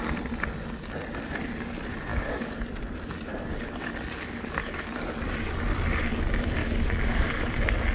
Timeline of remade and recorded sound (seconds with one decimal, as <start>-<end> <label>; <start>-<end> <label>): 0.0-2.1 recorded; 2.1-2.6 remade; 2.6-3.5 recorded; 3.5-5.3 remade; 5.3-6.6 recorded; 6.6-7.5 remade; 7.5-7.9 recorded